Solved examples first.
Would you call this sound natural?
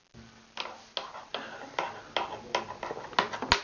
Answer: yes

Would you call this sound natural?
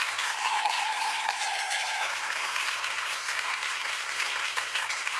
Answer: no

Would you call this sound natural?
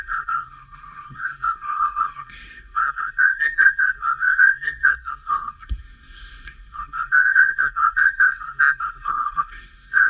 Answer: no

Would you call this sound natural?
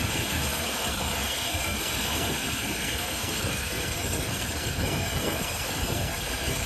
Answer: no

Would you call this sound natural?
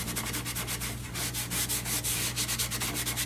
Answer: yes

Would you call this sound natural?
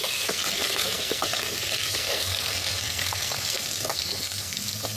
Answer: no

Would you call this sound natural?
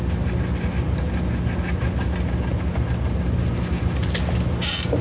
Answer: yes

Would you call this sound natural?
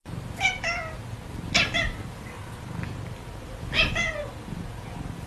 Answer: yes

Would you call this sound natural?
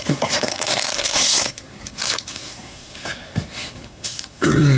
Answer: no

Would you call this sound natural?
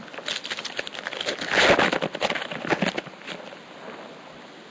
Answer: yes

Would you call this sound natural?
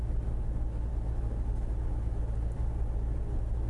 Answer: yes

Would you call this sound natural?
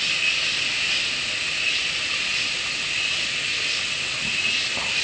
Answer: yes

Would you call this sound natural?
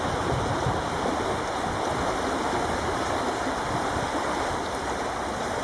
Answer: yes